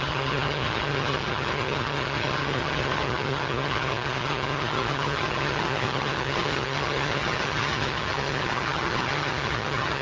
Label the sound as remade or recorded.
remade